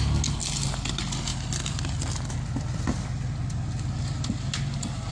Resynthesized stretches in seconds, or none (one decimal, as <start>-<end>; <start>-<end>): none